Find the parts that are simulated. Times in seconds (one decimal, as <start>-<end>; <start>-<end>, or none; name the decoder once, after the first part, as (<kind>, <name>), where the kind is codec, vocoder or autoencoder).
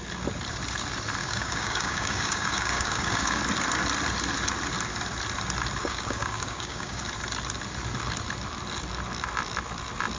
1.2-3.4 (codec, DAC); 5.8-7.0